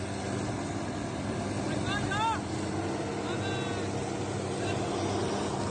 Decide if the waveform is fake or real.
real